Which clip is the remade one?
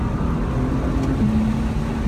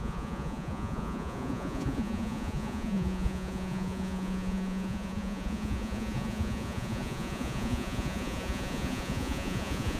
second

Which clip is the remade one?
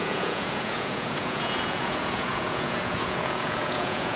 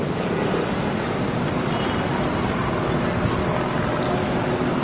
first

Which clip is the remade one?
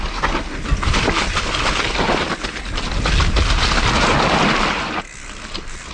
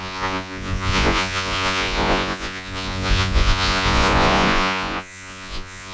second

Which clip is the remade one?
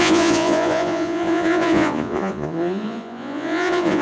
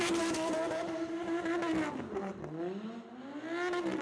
first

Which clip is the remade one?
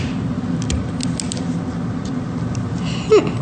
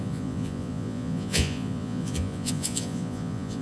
second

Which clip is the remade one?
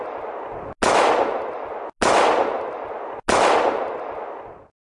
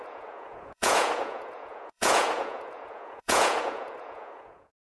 second